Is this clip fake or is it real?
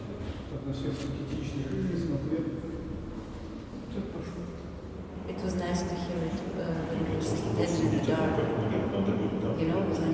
real